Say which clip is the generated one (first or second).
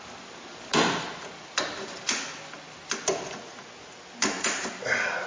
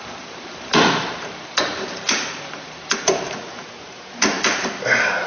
second